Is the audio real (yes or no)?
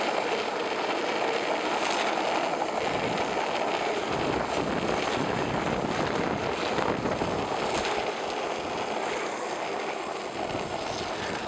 yes